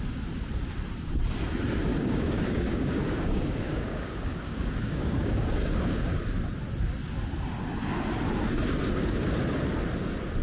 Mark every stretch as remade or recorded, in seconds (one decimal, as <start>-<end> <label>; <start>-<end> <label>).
0.0-1.9 recorded; 1.9-6.1 remade; 6.1-10.4 recorded